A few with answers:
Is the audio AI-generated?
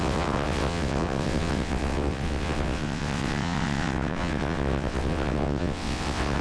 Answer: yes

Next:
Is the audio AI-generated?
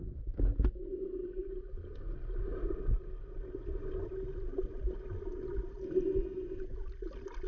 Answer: no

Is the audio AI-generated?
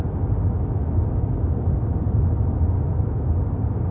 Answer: no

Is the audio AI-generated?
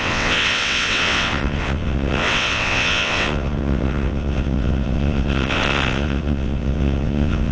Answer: yes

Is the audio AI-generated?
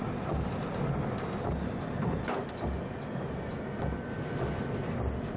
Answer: no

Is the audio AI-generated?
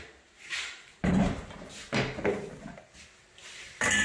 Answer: no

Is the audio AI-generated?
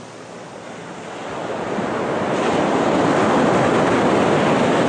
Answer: no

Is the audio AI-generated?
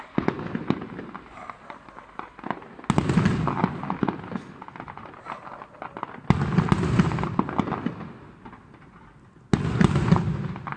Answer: no